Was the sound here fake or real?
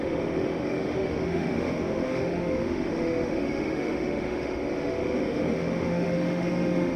fake